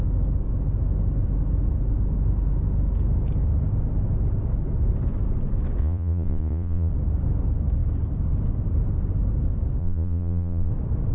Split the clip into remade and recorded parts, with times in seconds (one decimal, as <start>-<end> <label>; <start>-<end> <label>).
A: 0.0-5.8 recorded; 5.8-6.9 remade; 6.9-9.8 recorded; 9.8-10.7 remade; 10.7-11.1 recorded